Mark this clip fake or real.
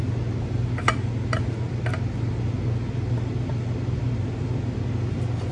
real